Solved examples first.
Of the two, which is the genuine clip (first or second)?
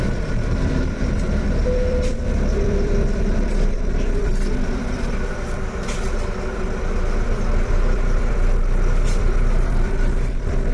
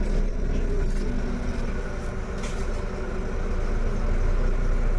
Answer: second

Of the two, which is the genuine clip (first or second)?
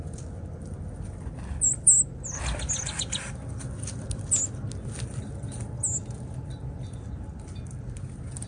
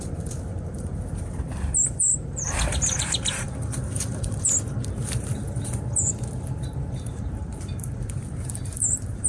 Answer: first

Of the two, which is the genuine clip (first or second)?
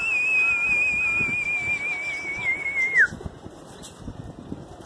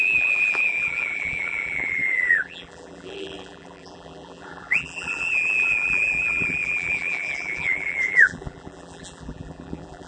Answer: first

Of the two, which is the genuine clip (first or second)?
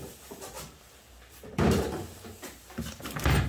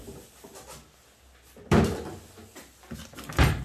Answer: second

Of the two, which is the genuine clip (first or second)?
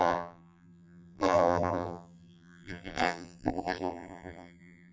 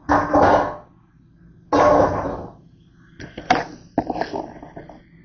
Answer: second